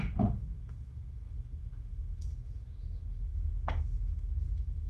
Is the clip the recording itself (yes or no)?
no